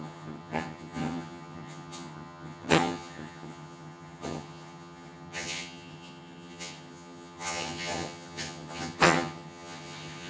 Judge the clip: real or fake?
fake